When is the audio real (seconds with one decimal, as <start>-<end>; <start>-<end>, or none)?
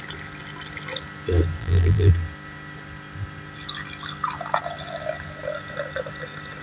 0.0-1.6; 2.1-6.6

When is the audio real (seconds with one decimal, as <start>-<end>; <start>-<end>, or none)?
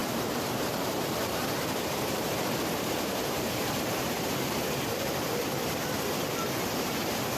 4.4-6.4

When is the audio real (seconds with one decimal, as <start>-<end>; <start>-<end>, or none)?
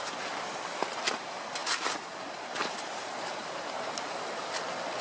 0.0-1.6; 4.6-5.0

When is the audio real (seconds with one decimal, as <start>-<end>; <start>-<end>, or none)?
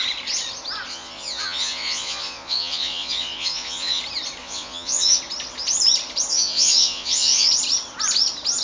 0.0-0.9; 4.0-4.4; 5.2-6.3; 7.5-8.6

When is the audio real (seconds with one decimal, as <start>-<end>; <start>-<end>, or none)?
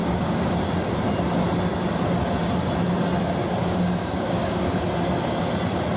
0.6-3.4; 4.8-6.0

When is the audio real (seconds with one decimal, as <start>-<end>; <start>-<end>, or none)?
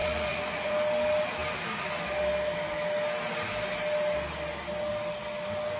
0.7-5.8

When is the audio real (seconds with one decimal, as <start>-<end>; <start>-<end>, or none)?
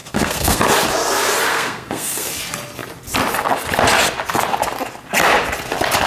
0.6-1.5; 2.3-6.1